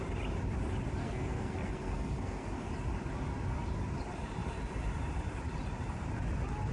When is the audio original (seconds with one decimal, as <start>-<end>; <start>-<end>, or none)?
0.0-1.0; 2.7-6.7